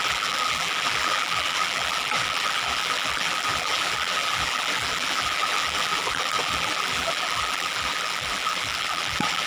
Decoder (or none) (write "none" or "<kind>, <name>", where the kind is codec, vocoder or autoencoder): vocoder, BigVGAN v2